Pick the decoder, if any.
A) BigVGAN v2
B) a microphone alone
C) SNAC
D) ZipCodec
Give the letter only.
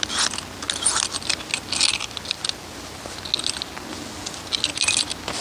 B